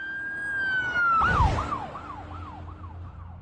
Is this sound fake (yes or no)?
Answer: no